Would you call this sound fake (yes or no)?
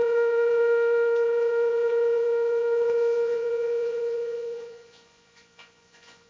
yes